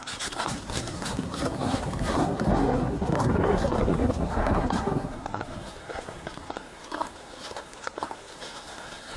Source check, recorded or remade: remade